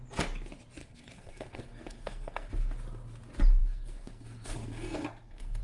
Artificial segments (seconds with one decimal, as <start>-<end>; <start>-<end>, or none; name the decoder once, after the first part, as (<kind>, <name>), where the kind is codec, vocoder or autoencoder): 0.8-2.5 (codec, SNAC); 3.6-5.6